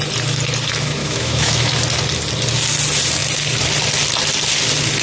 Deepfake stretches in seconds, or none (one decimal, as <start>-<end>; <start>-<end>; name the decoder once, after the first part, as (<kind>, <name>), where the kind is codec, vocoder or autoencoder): 1.0-1.7 (autoencoder, DAC-VAE)